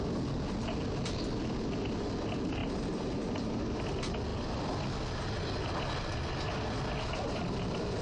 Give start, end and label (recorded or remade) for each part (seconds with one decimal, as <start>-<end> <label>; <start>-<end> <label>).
0.0-2.6 recorded; 2.6-3.9 remade; 3.9-8.0 recorded